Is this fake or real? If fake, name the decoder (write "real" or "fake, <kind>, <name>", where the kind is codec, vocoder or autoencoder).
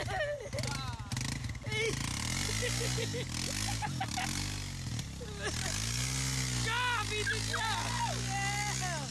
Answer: real